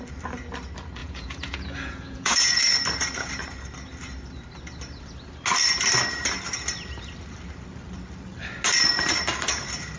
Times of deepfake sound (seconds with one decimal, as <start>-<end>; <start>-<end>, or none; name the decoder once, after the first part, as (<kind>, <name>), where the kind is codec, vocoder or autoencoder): 1.0-2.6 (vocoder, Vocos)